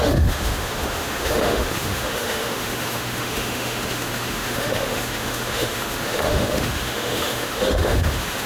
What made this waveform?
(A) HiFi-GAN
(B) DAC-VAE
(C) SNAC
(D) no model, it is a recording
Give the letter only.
B